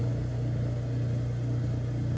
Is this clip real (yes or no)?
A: yes